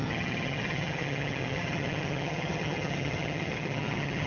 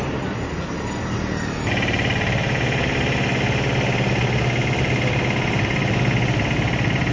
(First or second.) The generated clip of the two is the first